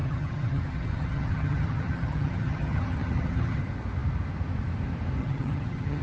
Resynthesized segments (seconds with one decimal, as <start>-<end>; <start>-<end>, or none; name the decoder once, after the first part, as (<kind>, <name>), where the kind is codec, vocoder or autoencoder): 0.0-3.6 (vocoder, HiFi-GAN); 5.2-6.0